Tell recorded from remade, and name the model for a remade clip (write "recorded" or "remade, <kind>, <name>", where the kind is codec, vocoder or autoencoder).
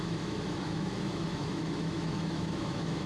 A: remade, autoencoder, DAC-VAE